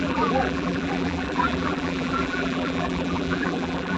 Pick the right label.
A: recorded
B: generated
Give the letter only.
B